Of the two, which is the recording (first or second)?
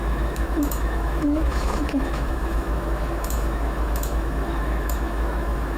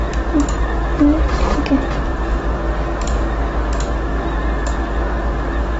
second